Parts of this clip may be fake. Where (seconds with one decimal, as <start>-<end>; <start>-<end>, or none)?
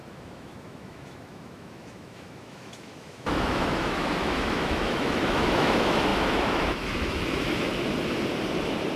0.0-7.7